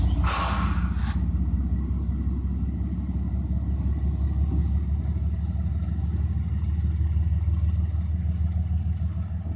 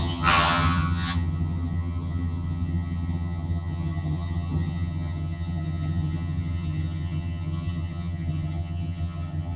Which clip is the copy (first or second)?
second